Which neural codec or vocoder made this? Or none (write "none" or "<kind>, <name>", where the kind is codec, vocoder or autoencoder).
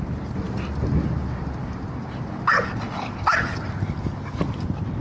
none